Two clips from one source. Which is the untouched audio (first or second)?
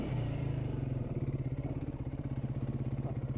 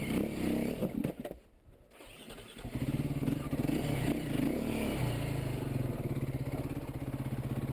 second